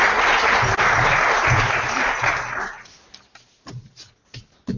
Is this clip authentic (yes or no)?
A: yes